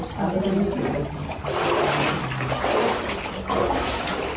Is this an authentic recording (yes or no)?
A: yes